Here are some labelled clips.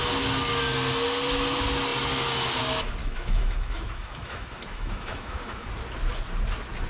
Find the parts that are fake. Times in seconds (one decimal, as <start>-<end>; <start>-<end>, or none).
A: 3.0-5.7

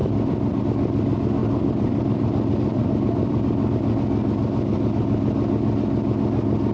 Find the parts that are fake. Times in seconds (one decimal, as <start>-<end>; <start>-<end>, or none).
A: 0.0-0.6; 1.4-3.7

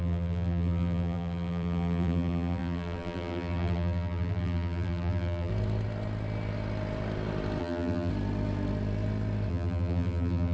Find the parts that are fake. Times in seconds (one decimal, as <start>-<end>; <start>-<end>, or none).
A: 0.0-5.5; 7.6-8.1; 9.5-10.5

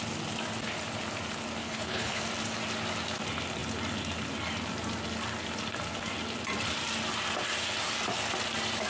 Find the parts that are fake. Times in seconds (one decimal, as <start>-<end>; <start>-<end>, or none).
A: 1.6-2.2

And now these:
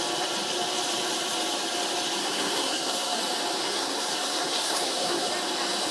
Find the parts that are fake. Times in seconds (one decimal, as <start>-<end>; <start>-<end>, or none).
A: 2.2-3.2; 3.6-5.3

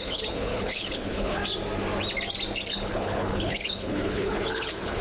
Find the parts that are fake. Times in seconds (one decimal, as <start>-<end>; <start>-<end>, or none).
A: 0.0-1.4; 2.7-5.0

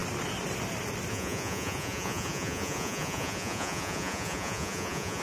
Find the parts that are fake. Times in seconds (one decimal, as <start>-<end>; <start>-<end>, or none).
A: 1.1-5.2